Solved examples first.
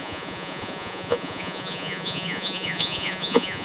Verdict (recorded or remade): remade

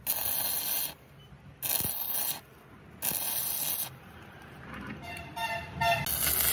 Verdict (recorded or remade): recorded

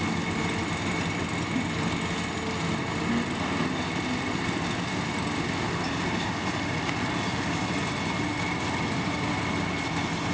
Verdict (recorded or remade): recorded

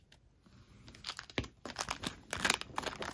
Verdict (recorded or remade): recorded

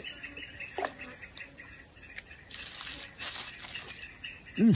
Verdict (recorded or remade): recorded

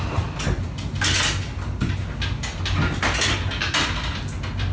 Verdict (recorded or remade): recorded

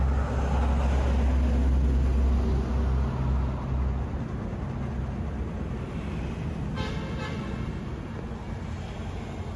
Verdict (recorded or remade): recorded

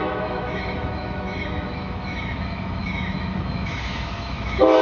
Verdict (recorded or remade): remade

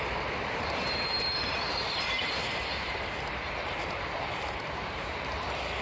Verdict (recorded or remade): remade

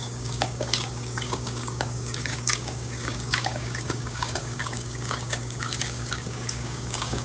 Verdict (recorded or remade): remade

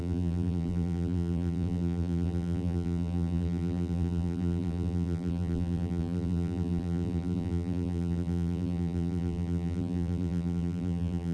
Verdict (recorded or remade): remade